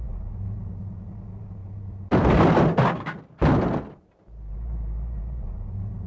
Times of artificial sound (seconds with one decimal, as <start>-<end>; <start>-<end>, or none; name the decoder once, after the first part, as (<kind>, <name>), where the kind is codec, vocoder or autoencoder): none